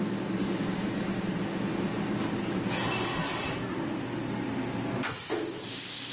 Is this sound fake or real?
real